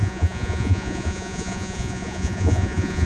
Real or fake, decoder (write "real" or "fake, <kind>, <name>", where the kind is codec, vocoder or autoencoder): fake, vocoder, Vocos